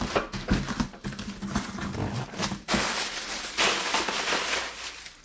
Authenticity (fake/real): real